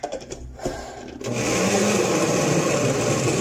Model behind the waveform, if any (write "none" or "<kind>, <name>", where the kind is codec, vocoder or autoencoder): none